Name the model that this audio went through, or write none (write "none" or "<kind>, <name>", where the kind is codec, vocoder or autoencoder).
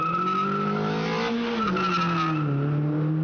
none